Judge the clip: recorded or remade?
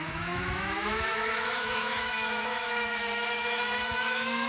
remade